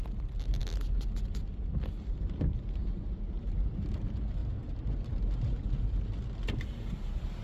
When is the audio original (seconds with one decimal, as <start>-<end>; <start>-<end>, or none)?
0.0-2.8; 3.9-4.4; 5.6-7.4